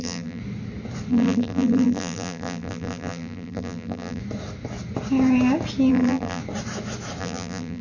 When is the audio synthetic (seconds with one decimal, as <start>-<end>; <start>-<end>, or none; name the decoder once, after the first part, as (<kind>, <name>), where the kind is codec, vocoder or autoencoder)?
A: 0.0-0.4 (vocoder, BigVGAN v2); 1.1-4.2; 5.9-6.4; 7.2-7.8